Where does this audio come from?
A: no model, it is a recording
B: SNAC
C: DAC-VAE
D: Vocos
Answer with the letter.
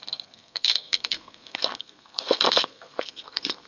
B